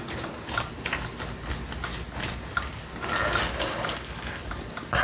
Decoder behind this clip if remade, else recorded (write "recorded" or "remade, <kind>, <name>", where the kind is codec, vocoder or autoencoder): recorded